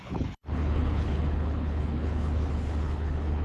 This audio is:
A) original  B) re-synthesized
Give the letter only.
B